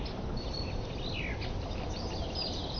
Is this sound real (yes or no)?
yes